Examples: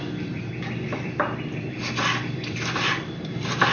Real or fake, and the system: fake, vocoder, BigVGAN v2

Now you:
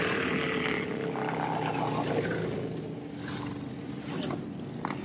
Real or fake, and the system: real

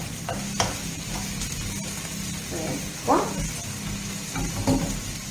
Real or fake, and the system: real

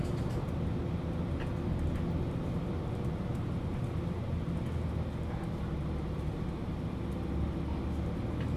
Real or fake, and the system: real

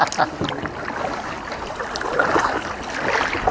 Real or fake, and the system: real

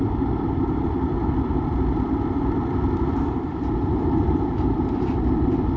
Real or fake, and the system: fake, vocoder, BigVGAN v2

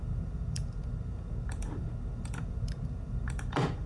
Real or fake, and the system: fake, vocoder, BigVGAN v2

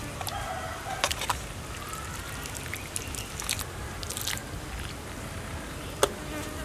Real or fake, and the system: real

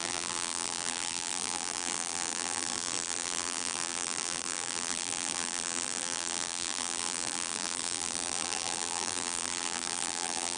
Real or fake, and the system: fake, vocoder, BigVGAN v2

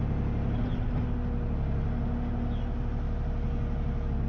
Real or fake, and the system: real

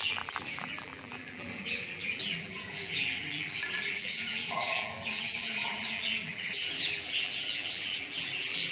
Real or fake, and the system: fake, vocoder, BigVGAN v2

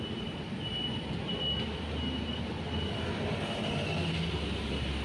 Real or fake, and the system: real